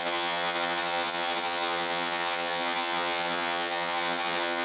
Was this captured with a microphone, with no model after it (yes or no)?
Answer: no